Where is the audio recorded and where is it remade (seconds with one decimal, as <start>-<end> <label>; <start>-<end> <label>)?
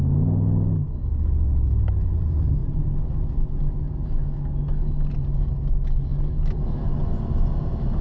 0.0-8.0 recorded